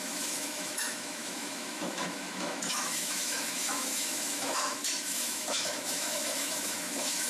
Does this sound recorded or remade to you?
remade